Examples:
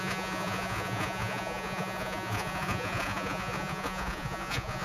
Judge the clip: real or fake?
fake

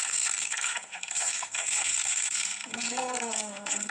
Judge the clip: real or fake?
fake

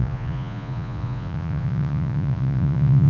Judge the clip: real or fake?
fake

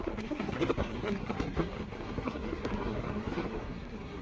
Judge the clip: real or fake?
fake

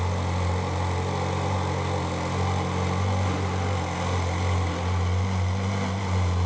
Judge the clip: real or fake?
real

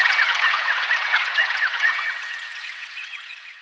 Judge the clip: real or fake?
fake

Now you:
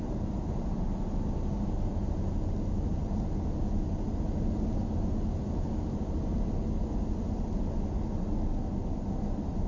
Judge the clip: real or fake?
real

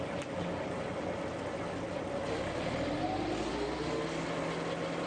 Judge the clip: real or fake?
real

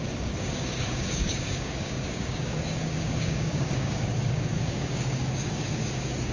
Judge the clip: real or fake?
fake